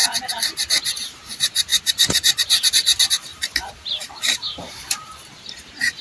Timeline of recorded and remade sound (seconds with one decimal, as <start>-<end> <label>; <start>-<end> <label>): 0.0-0.9 recorded; 0.9-6.0 remade

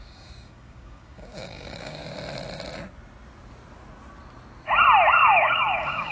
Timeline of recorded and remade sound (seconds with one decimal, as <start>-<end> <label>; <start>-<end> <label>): 0.0-2.0 remade; 2.0-5.1 recorded; 5.1-6.1 remade

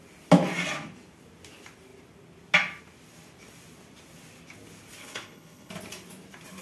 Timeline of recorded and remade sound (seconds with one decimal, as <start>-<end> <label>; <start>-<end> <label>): 0.0-5.0 recorded; 5.0-5.7 remade; 5.7-6.6 recorded

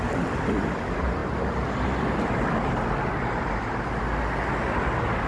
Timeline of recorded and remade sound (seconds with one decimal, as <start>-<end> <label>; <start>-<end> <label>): 0.0-5.3 recorded

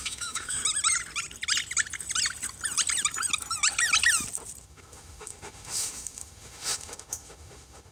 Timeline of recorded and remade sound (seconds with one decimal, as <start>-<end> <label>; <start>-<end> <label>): 0.0-0.6 remade; 0.6-4.6 recorded; 4.6-7.9 remade

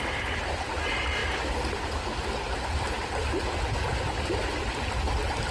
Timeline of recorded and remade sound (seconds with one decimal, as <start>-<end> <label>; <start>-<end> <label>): 0.0-5.5 recorded